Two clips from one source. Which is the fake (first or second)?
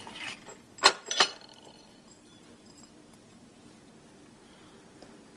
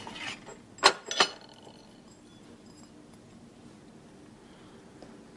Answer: first